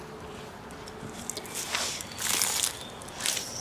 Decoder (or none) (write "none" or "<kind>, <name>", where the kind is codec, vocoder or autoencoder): none